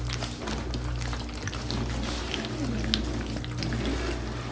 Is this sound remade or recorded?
recorded